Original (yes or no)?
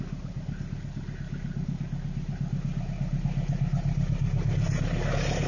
yes